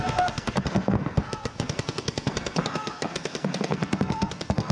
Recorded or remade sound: remade